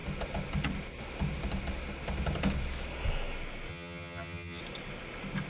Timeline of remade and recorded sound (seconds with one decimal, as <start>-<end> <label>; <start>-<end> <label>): 0.0-3.7 recorded; 3.7-4.6 remade; 4.6-5.5 recorded

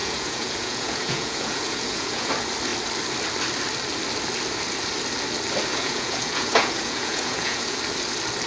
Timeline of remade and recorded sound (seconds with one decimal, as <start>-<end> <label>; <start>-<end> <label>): 0.0-2.3 remade; 2.3-5.7 recorded; 5.7-7.8 remade; 7.8-8.5 recorded

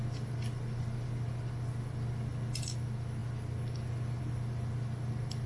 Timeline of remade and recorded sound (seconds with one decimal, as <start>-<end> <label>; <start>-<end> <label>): 0.0-5.5 recorded